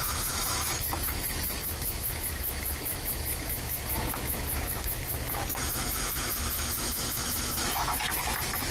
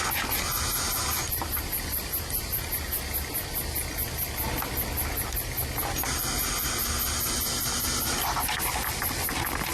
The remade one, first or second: first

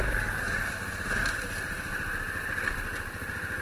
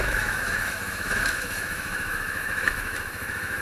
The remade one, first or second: second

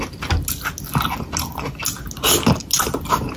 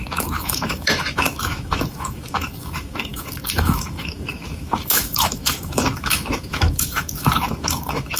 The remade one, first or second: second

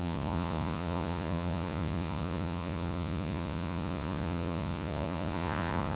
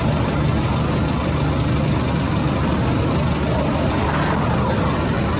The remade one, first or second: first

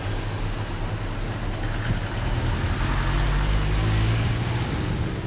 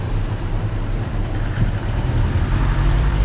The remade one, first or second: second